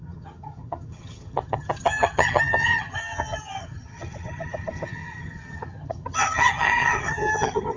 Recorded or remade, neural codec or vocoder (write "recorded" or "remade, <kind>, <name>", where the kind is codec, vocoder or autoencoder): remade, vocoder, HiFi-GAN